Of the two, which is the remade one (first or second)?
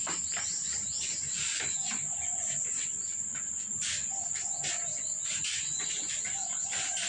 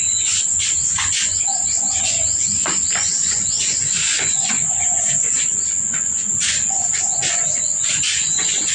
second